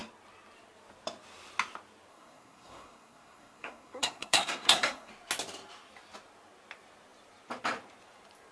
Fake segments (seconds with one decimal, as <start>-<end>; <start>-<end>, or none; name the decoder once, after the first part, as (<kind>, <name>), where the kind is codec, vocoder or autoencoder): 2.1-5.1 (codec, SNAC)